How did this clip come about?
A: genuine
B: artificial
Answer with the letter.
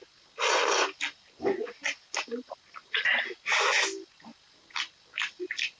A